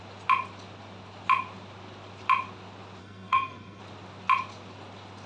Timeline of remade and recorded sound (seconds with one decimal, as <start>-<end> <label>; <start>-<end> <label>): 0.0-3.0 recorded; 3.0-3.8 remade; 3.8-5.3 recorded